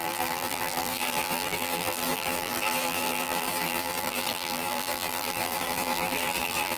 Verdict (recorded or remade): remade